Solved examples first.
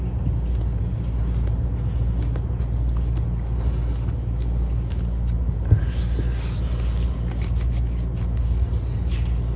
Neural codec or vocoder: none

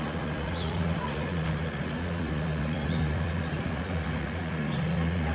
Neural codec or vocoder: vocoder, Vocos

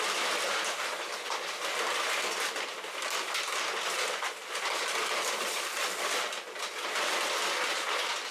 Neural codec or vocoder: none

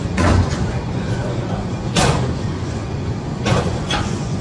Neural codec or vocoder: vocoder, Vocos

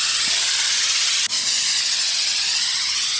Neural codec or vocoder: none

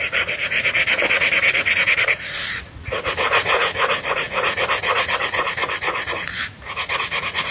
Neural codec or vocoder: vocoder, Vocos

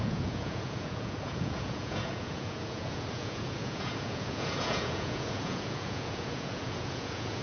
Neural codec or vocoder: vocoder, Vocos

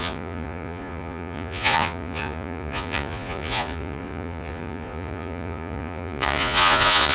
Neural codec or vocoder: vocoder, Vocos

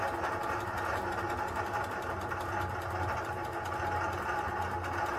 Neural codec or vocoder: none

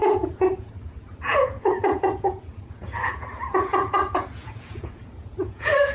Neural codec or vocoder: vocoder, Vocos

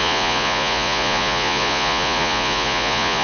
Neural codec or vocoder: vocoder, Vocos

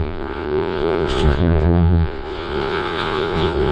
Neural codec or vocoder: vocoder, Vocos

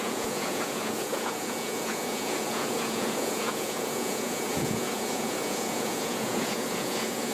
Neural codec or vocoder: vocoder, Vocos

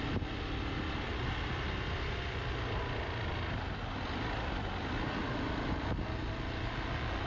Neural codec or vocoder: none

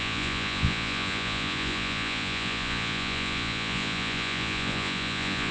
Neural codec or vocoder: vocoder, Vocos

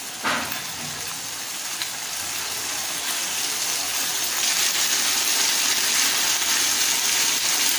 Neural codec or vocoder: none